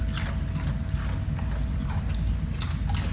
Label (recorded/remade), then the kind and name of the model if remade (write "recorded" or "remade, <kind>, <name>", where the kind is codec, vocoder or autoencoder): recorded